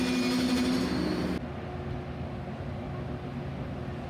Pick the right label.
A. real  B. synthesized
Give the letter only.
A